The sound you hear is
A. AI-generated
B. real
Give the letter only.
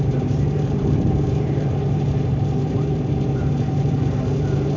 A